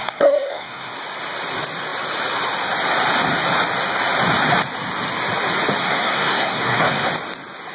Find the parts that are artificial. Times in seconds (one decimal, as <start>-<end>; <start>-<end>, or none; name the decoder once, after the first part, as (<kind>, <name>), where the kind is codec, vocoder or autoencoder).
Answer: 0.0-0.9 (codec, SNAC); 5.8-7.1